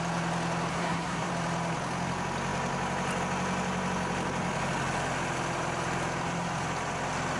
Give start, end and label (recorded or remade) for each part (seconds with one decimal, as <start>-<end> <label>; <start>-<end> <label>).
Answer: 0.0-0.7 recorded; 0.7-1.3 remade; 1.3-7.4 recorded